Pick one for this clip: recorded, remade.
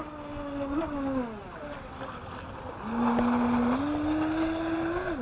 recorded